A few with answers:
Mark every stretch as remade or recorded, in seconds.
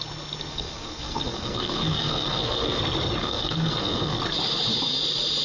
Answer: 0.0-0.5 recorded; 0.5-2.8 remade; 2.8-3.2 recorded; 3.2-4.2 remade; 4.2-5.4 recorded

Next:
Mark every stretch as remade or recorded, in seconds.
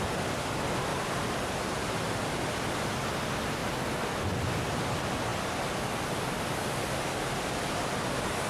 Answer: 0.0-0.9 recorded; 0.9-2.9 remade; 2.9-8.5 recorded